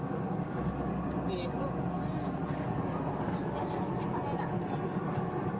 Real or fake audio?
real